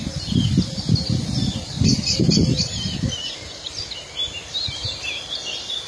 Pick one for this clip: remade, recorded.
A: remade